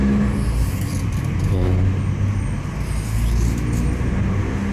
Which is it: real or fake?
real